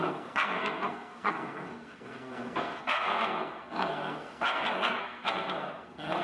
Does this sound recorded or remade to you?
remade